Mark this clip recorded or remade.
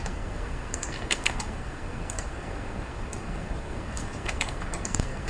remade